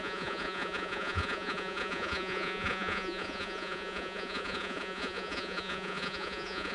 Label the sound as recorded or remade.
remade